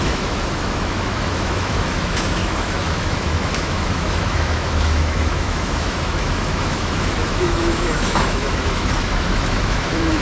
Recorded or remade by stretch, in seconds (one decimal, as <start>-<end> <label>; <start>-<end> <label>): 0.0-10.2 remade